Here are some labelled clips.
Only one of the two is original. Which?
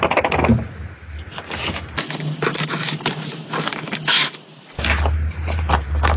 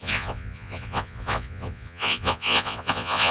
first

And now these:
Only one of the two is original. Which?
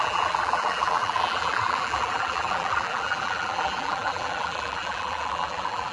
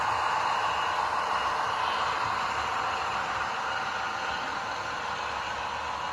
second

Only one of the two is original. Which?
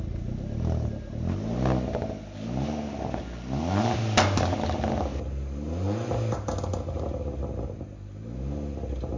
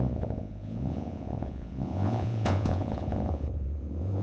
first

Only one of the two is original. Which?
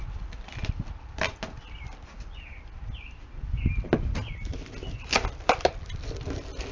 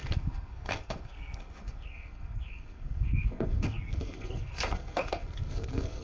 first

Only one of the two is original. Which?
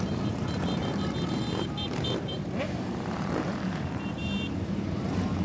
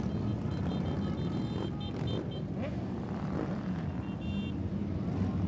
second